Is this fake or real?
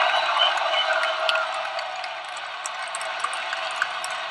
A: real